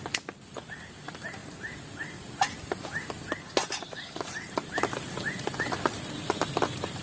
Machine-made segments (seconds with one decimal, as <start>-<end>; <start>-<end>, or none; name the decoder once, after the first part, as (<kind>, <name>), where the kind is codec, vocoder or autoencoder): none